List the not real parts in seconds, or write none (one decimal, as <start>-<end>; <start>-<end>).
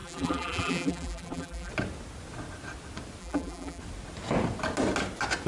0.0-1.7; 3.2-3.8